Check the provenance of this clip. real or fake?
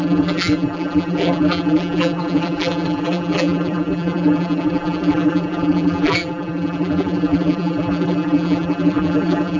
fake